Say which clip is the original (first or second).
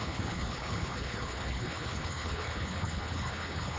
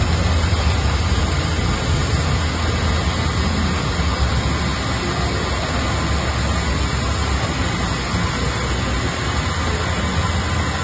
second